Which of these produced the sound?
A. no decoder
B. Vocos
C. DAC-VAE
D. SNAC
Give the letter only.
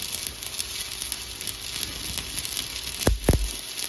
A